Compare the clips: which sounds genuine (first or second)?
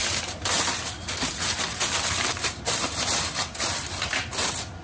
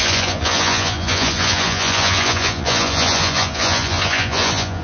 first